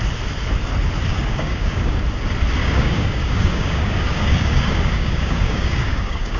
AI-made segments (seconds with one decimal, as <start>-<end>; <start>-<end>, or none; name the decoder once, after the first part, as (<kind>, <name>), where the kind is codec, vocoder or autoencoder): 1.1-2.0 (codec, DAC); 2.6-6.4